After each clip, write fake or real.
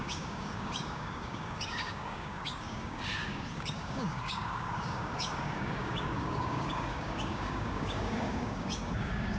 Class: fake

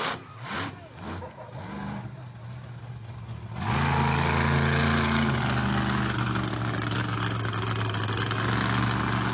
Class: real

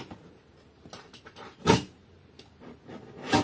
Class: real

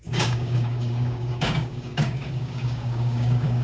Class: fake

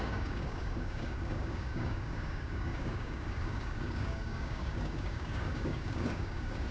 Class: fake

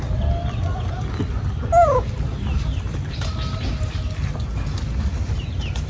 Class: real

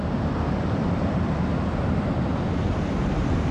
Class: real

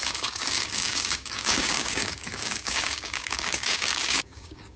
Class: fake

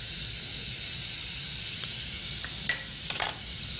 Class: real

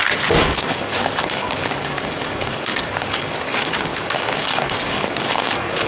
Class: fake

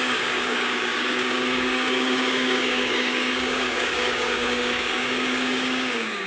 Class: fake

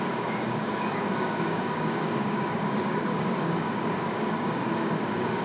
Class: fake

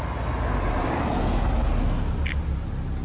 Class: real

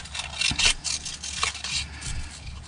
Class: real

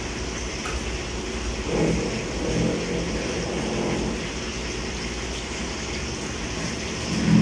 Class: real